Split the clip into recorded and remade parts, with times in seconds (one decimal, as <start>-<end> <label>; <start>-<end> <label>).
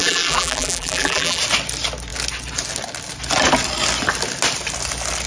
0.0-1.4 remade; 1.4-5.3 recorded